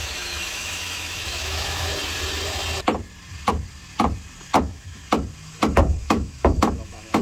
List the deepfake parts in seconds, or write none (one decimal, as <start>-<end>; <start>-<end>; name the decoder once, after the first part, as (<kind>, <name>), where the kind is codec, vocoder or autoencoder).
0.0-1.9 (autoencoder, DAC-VAE); 4.6-5.0; 6.0-7.2